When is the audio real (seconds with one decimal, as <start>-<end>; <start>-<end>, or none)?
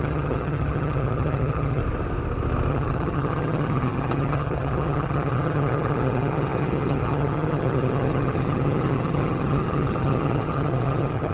1.8-2.7